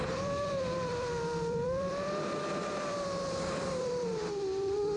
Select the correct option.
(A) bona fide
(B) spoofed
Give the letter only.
B